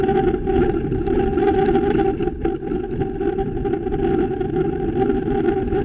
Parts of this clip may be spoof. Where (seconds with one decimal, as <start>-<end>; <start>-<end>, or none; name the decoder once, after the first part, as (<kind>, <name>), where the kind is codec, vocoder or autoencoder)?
none